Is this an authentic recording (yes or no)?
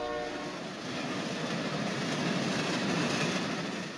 yes